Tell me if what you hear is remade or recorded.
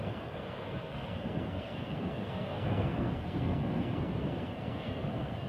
remade